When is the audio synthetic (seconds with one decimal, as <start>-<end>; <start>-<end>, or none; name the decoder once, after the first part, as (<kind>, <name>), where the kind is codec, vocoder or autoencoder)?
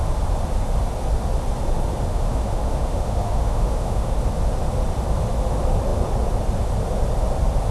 2.1-4.2 (autoencoder, DAC-VAE)